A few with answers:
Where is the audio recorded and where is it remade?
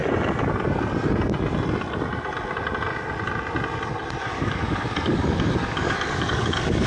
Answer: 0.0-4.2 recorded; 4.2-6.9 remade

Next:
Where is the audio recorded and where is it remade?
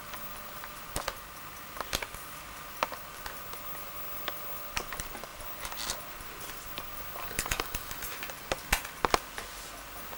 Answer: 0.0-7.2 recorded; 7.2-8.0 remade; 8.0-10.2 recorded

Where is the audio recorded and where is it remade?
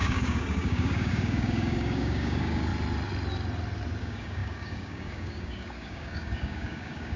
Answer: 0.0-2.7 remade; 2.7-4.0 recorded; 4.0-7.2 remade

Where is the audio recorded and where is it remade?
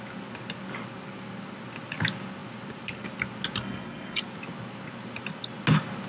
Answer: 0.0-3.6 recorded; 3.6-4.2 remade; 4.2-6.1 recorded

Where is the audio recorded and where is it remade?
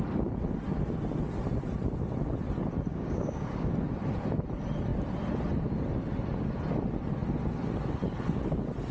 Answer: 0.0-2.9 recorded; 2.9-3.7 remade; 3.7-8.9 recorded